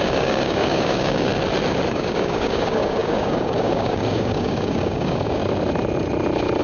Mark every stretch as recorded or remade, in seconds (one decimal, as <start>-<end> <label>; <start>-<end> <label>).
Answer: 0.0-1.3 remade; 1.3-1.9 recorded; 1.9-5.4 remade; 5.4-6.6 recorded

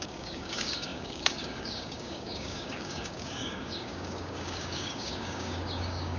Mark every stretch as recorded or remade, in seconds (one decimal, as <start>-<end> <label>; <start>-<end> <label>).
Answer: 0.0-6.2 remade

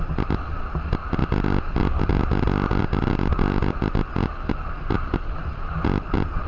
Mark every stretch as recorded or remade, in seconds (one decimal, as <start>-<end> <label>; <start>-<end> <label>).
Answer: 0.0-6.5 recorded

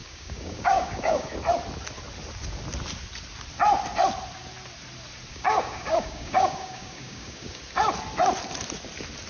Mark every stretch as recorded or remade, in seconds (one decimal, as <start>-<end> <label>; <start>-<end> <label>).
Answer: 0.0-1.3 remade; 1.3-5.3 recorded; 5.3-7.6 remade; 7.6-9.3 recorded